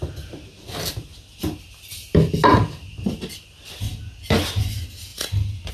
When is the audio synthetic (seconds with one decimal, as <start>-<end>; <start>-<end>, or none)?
none